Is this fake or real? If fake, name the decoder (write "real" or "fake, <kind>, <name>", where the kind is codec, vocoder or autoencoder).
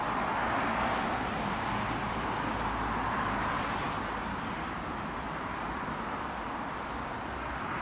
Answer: real